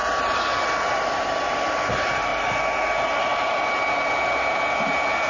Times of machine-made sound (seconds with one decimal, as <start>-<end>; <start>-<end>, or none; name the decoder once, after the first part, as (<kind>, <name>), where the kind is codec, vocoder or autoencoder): 1.9-2.3 (vocoder, BigVGAN v2)